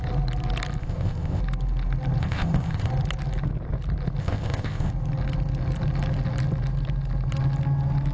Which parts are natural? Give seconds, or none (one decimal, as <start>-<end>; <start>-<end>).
0.0-0.8; 1.4-2.2; 2.9-4.2; 4.9-8.1